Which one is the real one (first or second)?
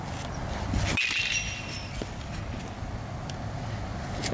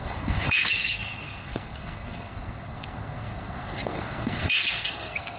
first